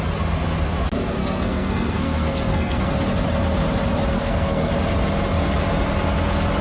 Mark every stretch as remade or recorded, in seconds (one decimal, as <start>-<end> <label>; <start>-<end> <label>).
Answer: 0.0-1.2 recorded; 1.2-2.9 remade; 2.9-4.1 recorded; 4.1-4.7 remade; 4.7-6.6 recorded